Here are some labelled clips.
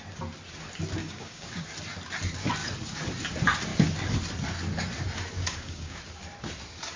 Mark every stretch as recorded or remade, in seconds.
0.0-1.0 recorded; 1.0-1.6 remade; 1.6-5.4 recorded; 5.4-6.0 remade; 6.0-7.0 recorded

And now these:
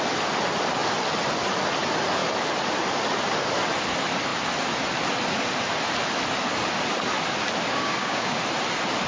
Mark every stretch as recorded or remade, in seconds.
0.0-7.7 recorded; 7.7-8.4 remade; 8.4-9.1 recorded

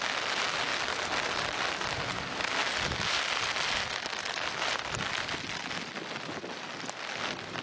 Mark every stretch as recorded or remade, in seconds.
0.0-7.6 recorded

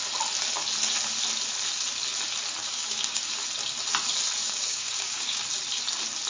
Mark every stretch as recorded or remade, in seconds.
0.0-2.6 recorded; 2.6-3.2 remade; 3.2-4.4 recorded; 4.4-5.4 remade; 5.4-6.3 recorded

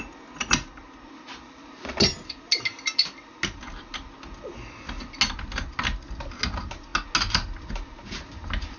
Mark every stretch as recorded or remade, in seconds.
0.0-8.8 recorded

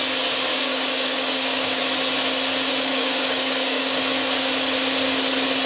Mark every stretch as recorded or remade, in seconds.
0.0-0.5 recorded; 0.5-1.8 remade; 1.8-2.9 recorded; 2.9-4.0 remade; 4.0-5.7 recorded

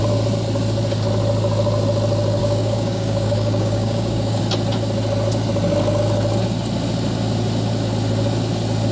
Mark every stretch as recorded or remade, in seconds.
0.0-2.4 recorded; 2.4-4.4 remade; 4.4-8.9 recorded

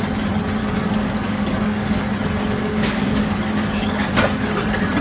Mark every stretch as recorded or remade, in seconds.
0.0-0.6 recorded; 0.6-2.0 remade; 2.0-2.6 recorded; 2.6-4.0 remade; 4.0-5.0 recorded